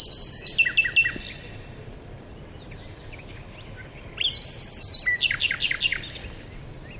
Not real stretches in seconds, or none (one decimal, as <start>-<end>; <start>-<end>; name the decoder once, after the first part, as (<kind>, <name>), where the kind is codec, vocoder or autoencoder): 1.0-5.2 (vocoder, BigVGAN v2)